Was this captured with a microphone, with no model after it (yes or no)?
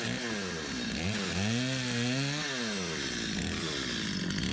yes